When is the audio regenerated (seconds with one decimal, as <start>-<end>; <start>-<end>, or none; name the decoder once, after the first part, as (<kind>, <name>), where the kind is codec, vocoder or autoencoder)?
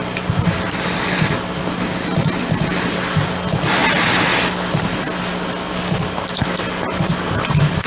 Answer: none